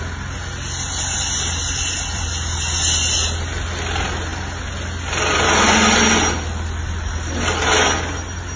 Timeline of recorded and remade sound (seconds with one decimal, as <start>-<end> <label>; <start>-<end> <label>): 0.0-8.6 recorded